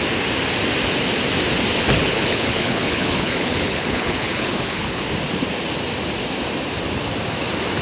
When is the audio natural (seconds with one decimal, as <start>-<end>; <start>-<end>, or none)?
0.0-2.0; 5.1-7.8